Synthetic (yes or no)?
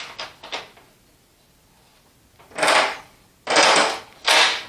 no